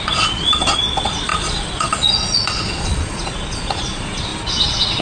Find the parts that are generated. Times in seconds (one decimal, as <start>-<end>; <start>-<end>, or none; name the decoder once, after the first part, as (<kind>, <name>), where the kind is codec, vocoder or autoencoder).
0.0-5.0 (vocoder, Vocos)